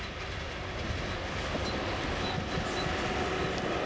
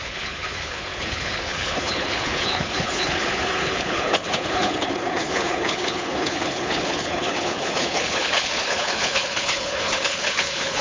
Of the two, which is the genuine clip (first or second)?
first